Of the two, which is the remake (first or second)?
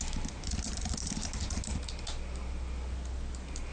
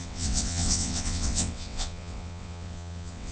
second